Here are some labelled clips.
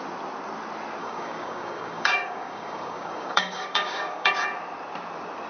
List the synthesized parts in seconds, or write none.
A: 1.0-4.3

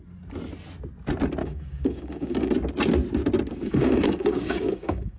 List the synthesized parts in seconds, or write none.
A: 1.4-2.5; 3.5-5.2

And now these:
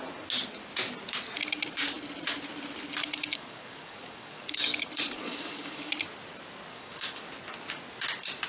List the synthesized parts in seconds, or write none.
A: 3.0-5.9; 6.7-7.2

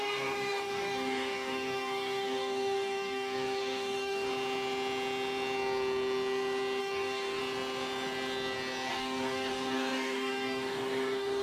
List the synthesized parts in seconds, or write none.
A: 0.0-4.3; 6.8-7.4; 8.9-11.4

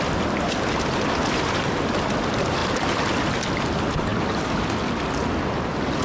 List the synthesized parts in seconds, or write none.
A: none

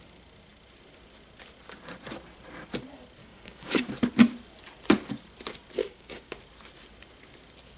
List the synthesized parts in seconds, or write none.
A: 3.2-3.8; 5.8-6.3